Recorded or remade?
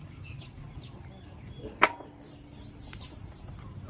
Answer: recorded